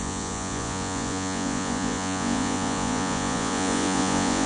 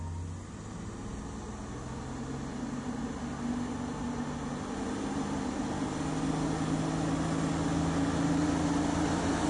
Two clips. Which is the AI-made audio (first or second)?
first